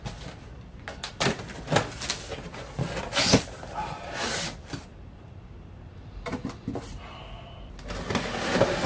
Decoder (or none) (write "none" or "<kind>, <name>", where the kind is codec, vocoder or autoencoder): none